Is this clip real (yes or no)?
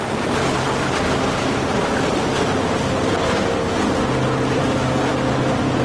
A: yes